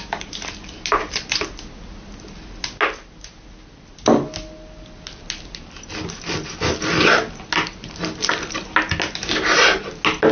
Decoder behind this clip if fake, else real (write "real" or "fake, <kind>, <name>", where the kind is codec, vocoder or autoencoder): real